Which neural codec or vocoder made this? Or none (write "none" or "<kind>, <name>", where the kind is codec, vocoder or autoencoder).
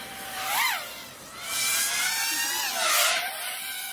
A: none